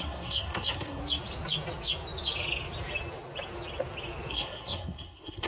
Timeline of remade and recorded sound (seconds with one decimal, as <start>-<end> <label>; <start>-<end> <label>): 0.0-1.0 remade; 1.0-4.3 recorded; 4.3-5.5 remade